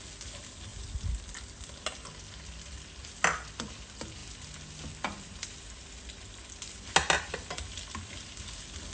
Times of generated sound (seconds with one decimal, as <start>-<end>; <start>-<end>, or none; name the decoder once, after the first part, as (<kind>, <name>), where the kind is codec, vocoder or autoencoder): none